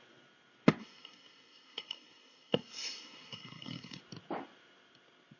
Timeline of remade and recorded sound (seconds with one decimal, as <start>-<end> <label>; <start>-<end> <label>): 0.0-0.8 recorded; 0.8-4.0 remade; 4.0-5.4 recorded